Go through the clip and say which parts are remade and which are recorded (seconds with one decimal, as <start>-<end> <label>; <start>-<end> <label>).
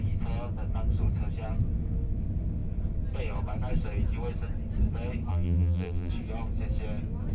0.0-5.3 recorded; 5.3-6.1 remade; 6.1-7.3 recorded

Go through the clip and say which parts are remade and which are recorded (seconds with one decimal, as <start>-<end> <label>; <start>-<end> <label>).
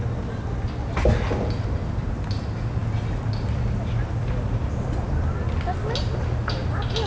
0.0-7.1 recorded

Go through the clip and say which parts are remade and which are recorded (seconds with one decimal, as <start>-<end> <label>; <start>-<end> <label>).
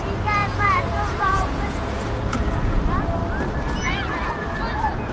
0.0-0.4 recorded; 0.4-2.8 remade; 2.8-5.1 recorded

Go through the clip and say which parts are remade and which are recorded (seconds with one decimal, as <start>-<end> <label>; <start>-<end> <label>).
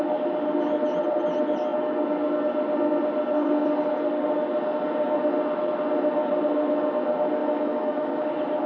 0.0-7.4 recorded; 7.4-8.1 remade; 8.1-8.7 recorded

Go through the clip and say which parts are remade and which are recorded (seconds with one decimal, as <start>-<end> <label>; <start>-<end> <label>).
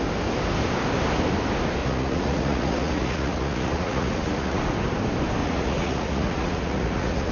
0.0-1.8 recorded; 1.8-4.6 remade; 4.6-5.4 recorded; 5.4-7.3 remade